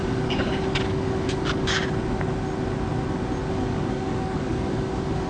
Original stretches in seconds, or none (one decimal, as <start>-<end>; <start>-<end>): 1.8-3.5